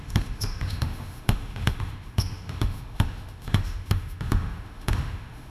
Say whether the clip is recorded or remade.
remade